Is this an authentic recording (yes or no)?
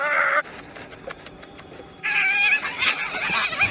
yes